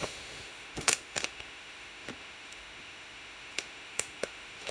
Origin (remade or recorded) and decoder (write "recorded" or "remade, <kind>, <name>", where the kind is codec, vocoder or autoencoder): remade, autoencoder, DAC-VAE